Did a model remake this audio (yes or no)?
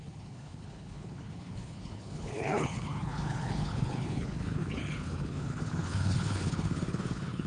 yes